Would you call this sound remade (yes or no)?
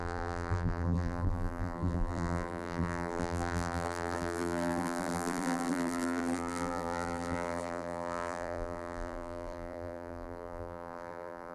yes